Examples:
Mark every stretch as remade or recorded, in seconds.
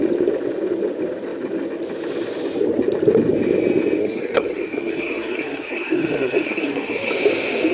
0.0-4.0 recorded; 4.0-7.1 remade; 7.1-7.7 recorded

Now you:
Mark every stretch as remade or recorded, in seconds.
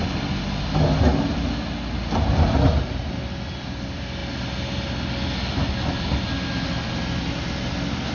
0.0-8.1 recorded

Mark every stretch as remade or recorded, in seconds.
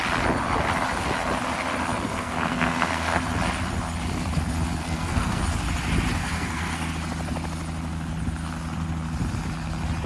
0.0-2.1 recorded; 2.1-3.2 remade; 3.2-4.8 recorded; 4.8-5.4 remade; 5.4-6.2 recorded; 6.2-6.9 remade; 6.9-10.1 recorded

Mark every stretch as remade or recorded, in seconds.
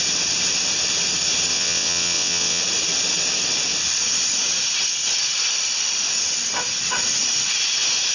0.0-1.5 recorded; 1.5-2.6 remade; 2.6-8.1 recorded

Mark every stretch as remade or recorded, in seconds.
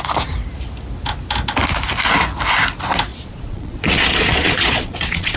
0.0-3.1 recorded; 3.1-5.4 remade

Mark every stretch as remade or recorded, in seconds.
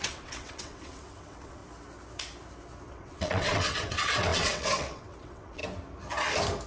0.0-1.6 remade; 1.6-2.9 recorded; 2.9-5.6 remade; 5.6-6.7 recorded